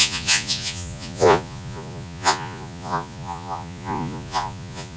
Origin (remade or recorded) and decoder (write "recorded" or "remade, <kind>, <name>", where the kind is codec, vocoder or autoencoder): remade, vocoder, Vocos